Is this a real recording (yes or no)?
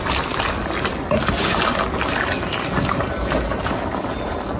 yes